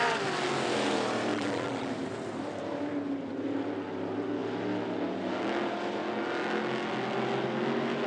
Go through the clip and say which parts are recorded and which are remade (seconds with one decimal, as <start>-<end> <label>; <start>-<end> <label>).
0.0-1.3 recorded; 1.3-1.9 remade; 1.9-8.1 recorded